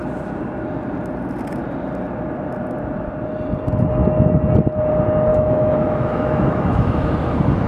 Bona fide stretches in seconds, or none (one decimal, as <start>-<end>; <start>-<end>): 0.0-5.3; 7.1-7.7